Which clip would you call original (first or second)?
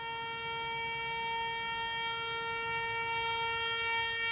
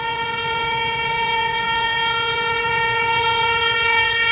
first